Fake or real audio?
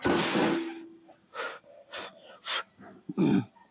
real